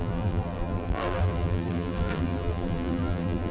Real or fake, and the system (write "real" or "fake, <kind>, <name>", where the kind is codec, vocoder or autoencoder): fake, vocoder, BigVGAN v2